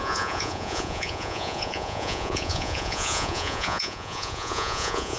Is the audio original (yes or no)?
no